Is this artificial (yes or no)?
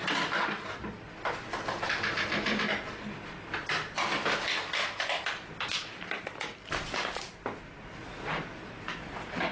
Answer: no